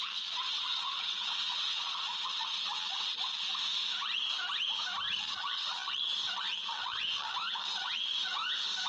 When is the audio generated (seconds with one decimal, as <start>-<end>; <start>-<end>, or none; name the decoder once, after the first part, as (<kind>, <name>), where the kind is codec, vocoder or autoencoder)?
0.0-3.5 (vocoder, WaveNeXt); 5.2-8.1